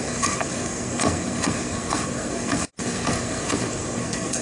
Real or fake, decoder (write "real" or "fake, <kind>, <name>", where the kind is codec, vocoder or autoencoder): fake, codec, SNAC